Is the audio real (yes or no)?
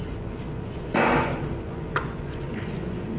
no